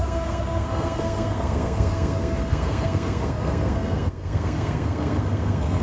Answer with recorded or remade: remade